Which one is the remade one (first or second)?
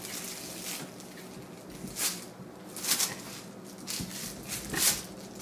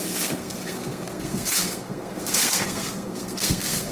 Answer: second